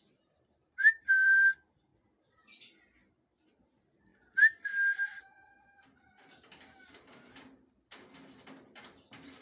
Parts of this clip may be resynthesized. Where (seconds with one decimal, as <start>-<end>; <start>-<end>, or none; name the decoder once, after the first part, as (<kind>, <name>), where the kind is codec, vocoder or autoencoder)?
0.0-1.9 (vocoder, BigVGAN v2); 3.6-4.1; 8.8-9.4